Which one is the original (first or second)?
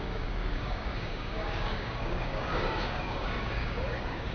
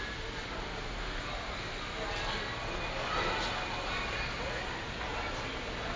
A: second